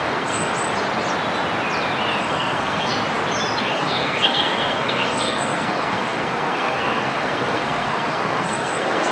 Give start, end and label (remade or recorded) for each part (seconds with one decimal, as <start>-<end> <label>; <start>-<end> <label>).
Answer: 0.0-0.5 remade; 0.5-2.2 recorded; 2.2-2.9 remade; 2.9-3.6 recorded; 3.6-9.1 remade